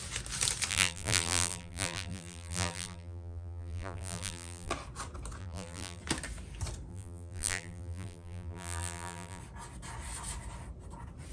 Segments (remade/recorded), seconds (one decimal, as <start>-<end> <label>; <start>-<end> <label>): 0.0-0.7 recorded; 0.7-4.7 remade; 4.7-5.4 recorded; 5.4-6.0 remade; 6.0-6.9 recorded; 6.9-9.4 remade; 9.4-11.3 recorded